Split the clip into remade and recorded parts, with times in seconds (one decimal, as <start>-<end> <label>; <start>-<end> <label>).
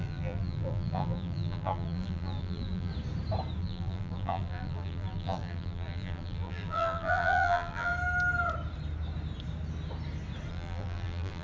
0.0-2.9 remade; 2.9-3.6 recorded; 3.6-7.9 remade; 7.9-10.5 recorded; 10.5-11.4 remade